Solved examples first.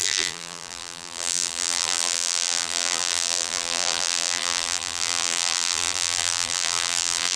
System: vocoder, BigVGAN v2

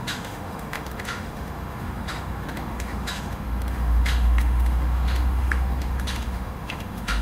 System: autoencoder, DAC-VAE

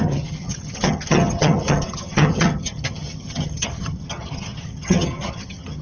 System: vocoder, HiFi-GAN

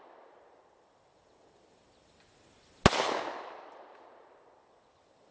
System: none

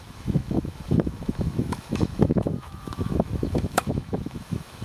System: autoencoder, DAC-VAE